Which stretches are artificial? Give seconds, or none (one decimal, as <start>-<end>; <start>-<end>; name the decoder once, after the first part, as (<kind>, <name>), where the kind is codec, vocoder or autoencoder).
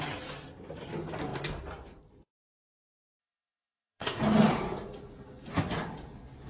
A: 3.2-4.2 (codec, ZipCodec)